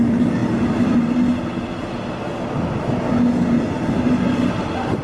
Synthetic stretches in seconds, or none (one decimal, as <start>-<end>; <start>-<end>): none